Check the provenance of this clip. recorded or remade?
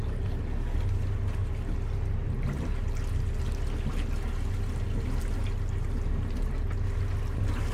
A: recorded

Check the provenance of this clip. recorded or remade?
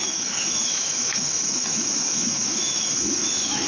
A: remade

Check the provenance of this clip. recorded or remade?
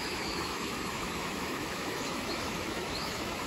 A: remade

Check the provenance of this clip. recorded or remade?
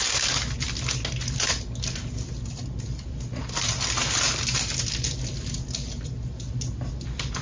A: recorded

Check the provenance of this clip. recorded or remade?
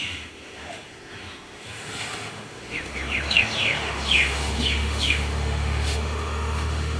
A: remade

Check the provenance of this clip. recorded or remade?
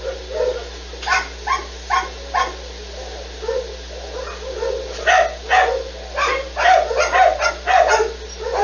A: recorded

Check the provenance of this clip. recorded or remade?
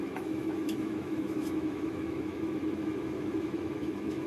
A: remade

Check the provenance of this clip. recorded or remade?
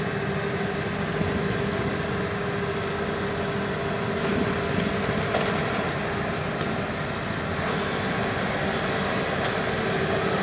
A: recorded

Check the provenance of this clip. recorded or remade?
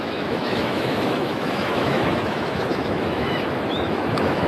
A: remade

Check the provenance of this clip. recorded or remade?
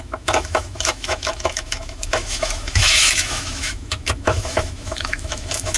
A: remade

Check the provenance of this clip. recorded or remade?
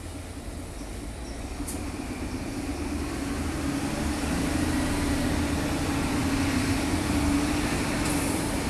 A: recorded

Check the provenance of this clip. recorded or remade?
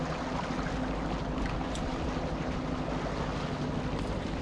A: recorded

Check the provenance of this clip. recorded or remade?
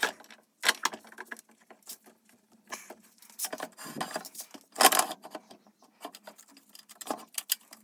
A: recorded